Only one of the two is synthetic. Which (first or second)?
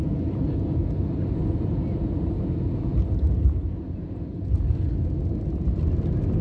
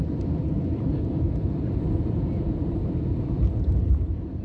second